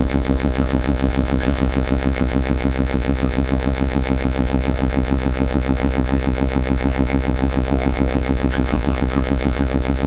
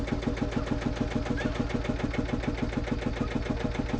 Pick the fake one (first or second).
first